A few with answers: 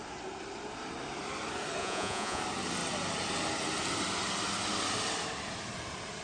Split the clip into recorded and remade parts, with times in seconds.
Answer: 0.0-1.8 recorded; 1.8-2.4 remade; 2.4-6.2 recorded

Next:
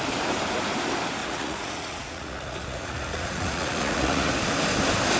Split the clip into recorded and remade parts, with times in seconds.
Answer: 0.0-1.2 recorded; 1.2-4.3 remade; 4.3-5.2 recorded

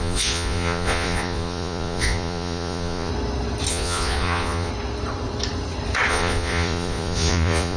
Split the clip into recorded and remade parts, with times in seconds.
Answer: 0.0-3.1 remade; 3.1-3.7 recorded; 3.7-4.7 remade; 4.7-6.1 recorded; 6.1-7.8 remade